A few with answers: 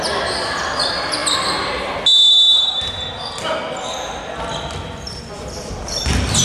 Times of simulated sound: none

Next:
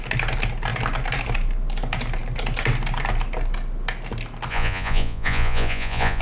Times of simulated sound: 4.5-6.2 (vocoder, Vocos)

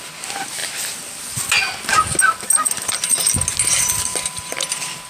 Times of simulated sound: none

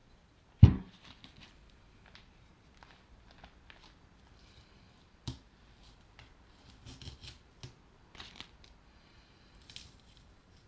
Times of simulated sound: none

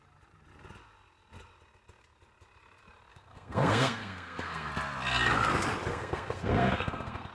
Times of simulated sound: 3.1-4.7 (codec, SNAC); 5.9-7.3